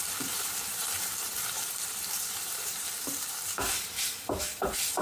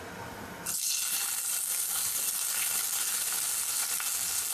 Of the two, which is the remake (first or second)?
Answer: first